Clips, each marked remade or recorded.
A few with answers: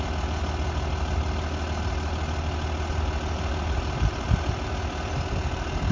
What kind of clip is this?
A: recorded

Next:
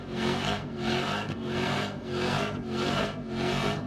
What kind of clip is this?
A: remade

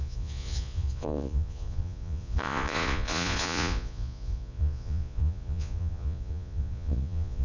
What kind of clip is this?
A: remade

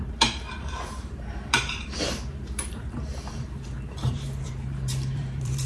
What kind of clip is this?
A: remade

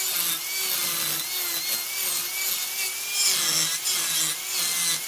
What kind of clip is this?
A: recorded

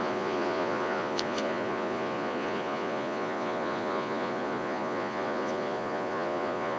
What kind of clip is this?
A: remade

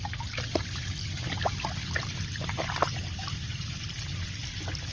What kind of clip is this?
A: recorded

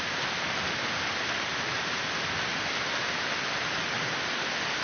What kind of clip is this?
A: recorded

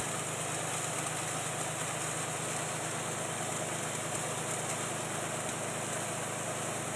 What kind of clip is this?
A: recorded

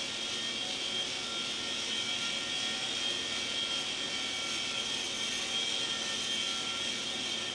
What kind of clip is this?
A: recorded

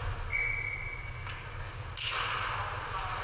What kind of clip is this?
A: recorded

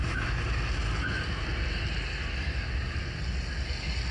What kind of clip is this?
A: recorded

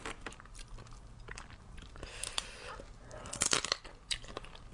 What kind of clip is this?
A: recorded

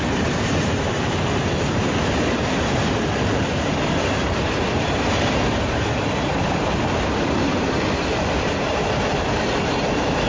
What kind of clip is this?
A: remade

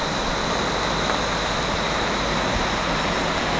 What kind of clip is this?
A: recorded